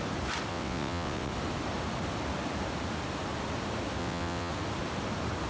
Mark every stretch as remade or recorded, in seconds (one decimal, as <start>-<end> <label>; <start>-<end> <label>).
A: 0.0-0.5 recorded; 0.5-1.3 remade; 1.3-4.0 recorded; 4.0-4.5 remade; 4.5-5.5 recorded